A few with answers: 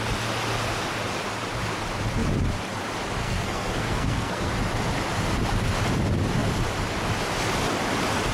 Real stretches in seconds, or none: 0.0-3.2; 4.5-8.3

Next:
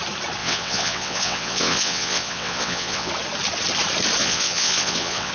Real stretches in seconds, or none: 0.0-0.4; 3.1-4.2

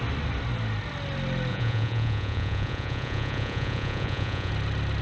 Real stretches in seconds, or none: 0.0-1.5; 4.5-5.0

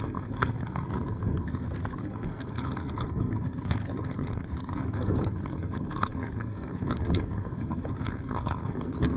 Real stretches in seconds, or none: none

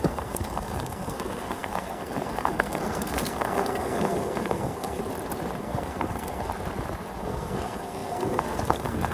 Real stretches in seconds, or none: 5.0-5.6; 6.5-7.2

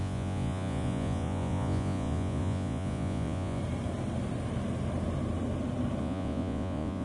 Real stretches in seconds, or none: 3.6-6.0

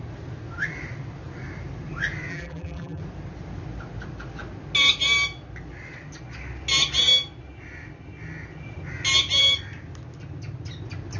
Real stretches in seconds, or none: 0.0-2.3; 3.0-11.2

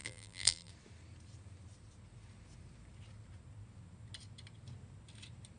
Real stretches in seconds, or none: 0.7-5.6